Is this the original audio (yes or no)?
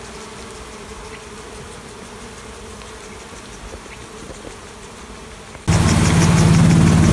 yes